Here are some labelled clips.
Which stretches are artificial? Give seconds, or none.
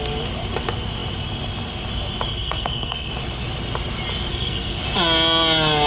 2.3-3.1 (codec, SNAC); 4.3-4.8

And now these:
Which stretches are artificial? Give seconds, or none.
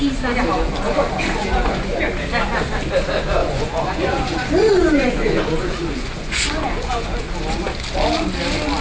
1.4-2.0 (vocoder, Vocos); 3.4-7.2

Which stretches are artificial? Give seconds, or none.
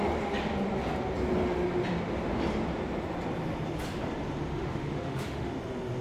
4.5-5.5 (autoencoder, DAC-VAE)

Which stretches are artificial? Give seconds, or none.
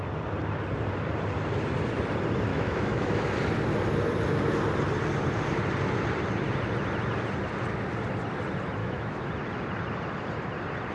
2.5-3.2 (autoencoder, DAC-VAE); 8.8-9.3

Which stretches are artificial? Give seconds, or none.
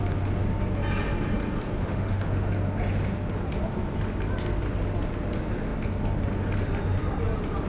1.8-2.5 (autoencoder, DAC-VAE)